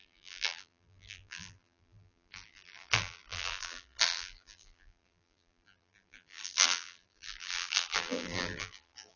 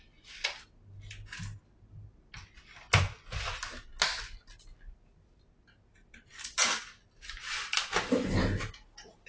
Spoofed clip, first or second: first